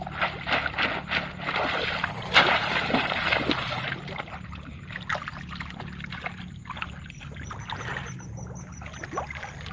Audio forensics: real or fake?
real